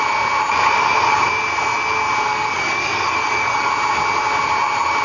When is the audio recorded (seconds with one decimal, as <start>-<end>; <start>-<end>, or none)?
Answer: 0.0-2.3; 3.7-5.0

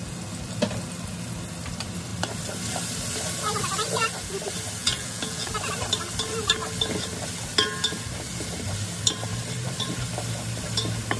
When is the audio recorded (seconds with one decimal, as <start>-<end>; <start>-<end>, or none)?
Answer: 0.0-4.8; 5.5-11.2